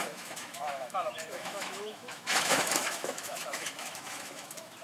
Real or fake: fake